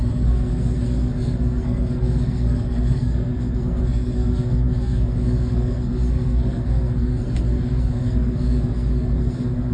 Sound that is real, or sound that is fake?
fake